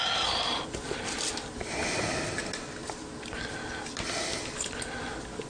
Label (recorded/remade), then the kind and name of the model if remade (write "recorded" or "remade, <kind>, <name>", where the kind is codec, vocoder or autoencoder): recorded